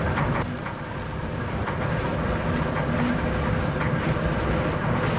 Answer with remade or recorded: recorded